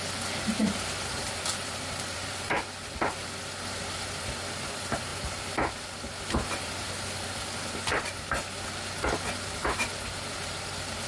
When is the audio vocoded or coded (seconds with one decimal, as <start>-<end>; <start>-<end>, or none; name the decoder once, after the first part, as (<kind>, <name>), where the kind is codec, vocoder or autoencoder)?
0.6-3.4 (vocoder, BigVGAN v2); 5.1-5.8